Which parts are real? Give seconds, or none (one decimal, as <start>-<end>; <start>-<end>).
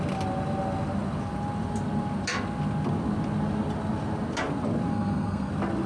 0.0-4.9; 5.5-5.9